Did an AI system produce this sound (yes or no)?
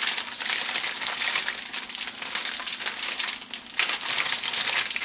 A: no